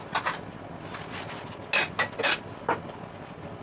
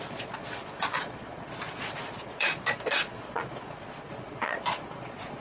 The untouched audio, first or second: first